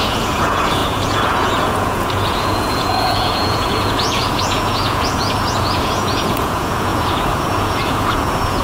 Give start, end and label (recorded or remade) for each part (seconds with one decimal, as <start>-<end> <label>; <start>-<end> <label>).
0.0-8.6 remade